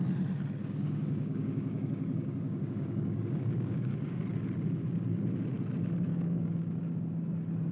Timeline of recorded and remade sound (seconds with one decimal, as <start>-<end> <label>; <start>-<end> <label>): 0.0-0.6 recorded; 0.6-4.2 remade; 4.2-6.1 recorded; 6.1-6.8 remade; 6.8-7.7 recorded